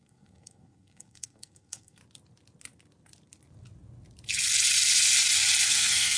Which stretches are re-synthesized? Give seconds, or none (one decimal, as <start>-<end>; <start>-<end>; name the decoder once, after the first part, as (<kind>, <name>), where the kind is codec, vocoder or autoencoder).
0.0-2.0 (codec, SNAC); 5.7-6.2